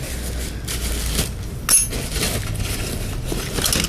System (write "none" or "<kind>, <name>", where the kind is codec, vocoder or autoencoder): none